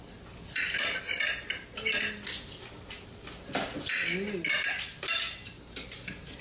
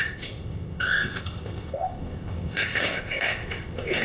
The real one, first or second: first